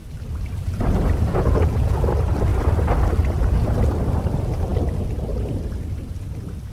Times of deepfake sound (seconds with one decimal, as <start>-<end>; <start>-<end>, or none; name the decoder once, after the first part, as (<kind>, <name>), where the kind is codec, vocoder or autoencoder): 1.3-2.0 (vocoder, Vocos)